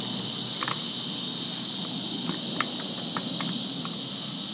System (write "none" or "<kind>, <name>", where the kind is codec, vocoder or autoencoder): none